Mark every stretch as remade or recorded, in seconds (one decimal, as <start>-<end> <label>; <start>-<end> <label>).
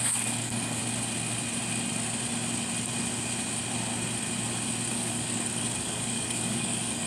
0.0-0.8 remade; 0.8-4.9 recorded; 4.9-7.1 remade